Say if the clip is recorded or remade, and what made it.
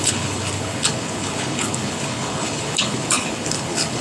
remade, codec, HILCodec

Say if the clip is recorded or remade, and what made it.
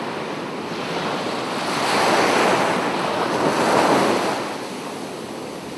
recorded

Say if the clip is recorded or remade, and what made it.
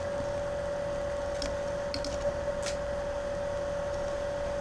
recorded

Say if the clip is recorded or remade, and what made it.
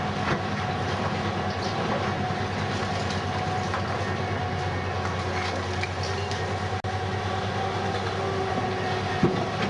recorded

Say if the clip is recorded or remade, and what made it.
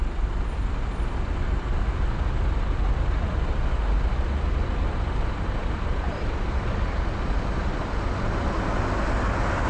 recorded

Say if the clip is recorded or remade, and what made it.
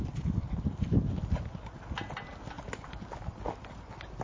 recorded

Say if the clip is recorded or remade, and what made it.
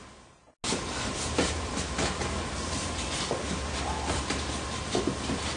recorded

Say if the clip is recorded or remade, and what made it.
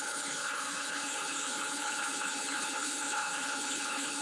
remade, codec, HILCodec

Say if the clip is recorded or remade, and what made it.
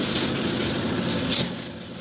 recorded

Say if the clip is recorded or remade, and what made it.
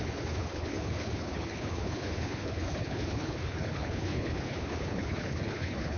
remade, codec, HILCodec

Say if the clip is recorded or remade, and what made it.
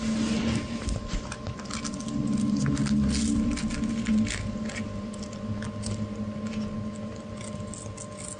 recorded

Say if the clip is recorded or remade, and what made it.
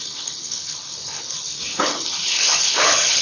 remade, codec, HILCodec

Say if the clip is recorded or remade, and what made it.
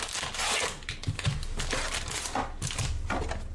recorded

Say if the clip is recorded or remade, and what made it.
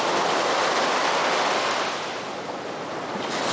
recorded